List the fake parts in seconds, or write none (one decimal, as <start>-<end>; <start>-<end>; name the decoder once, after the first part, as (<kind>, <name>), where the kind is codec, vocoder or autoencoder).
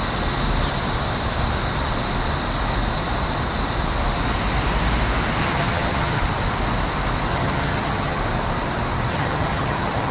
5.4-6.2 (vocoder, HiFi-GAN); 7.3-8.2; 9.1-10.1